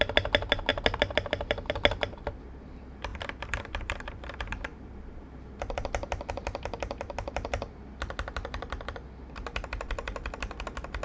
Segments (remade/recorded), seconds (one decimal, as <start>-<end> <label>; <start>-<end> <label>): 0.0-3.1 recorded; 3.1-4.1 remade; 4.1-11.0 recorded